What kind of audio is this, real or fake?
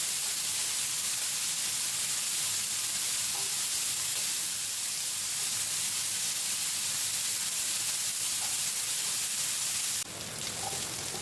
real